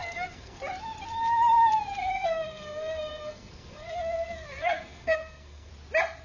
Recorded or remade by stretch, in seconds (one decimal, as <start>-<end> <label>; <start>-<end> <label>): 0.0-0.6 remade; 0.6-2.0 recorded; 2.0-5.7 remade; 5.7-6.2 recorded